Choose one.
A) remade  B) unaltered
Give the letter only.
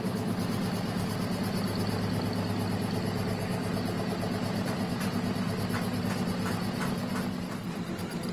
B